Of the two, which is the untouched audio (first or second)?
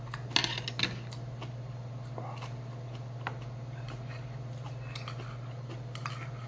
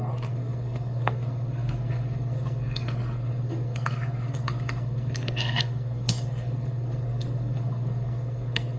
first